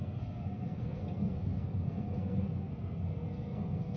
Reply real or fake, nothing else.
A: fake